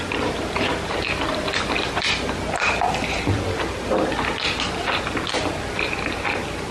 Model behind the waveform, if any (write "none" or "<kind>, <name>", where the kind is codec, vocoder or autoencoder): none